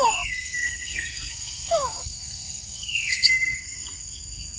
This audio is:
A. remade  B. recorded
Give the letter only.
A